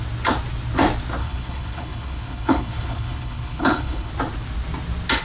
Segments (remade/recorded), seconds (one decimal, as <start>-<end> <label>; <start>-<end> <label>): 0.0-1.2 recorded; 1.2-4.1 remade; 4.1-5.2 recorded